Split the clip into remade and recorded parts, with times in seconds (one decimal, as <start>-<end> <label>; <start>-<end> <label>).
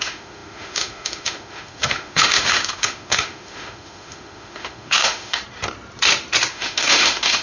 0.0-5.4 remade; 5.4-6.5 recorded; 6.5-7.4 remade